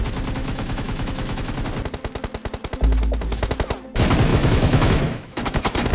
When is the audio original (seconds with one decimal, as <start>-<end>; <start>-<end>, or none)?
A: 0.0-0.4; 1.5-4.3